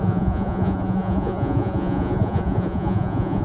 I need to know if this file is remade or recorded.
remade